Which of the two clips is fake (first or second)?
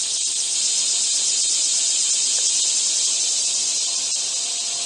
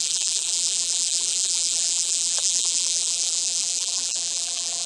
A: second